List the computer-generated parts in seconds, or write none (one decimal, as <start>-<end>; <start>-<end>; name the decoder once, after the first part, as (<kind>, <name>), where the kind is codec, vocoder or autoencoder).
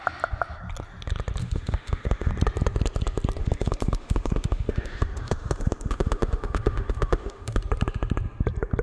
1.4-2.3 (autoencoder, DAC-VAE); 3.4-7.6